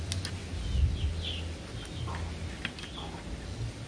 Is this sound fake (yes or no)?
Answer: no